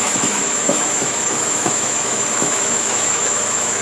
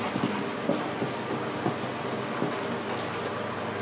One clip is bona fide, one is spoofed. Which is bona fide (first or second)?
second